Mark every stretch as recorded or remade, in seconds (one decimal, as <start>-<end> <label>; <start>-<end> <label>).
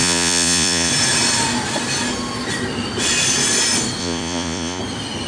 0.0-0.9 remade; 0.9-4.0 recorded; 4.0-4.8 remade; 4.8-5.3 recorded